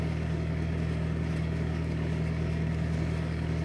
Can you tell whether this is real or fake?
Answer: fake